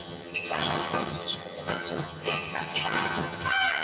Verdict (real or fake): fake